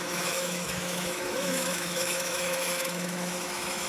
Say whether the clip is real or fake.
fake